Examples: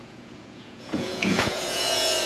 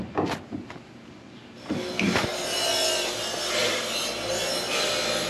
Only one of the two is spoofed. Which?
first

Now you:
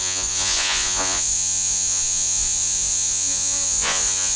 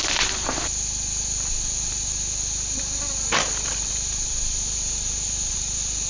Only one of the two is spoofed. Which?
first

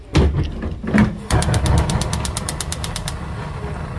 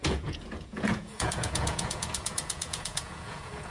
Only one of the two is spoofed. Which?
second